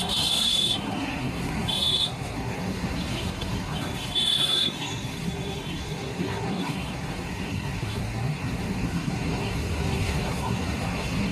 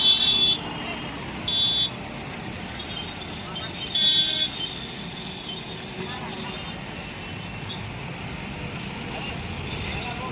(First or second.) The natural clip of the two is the second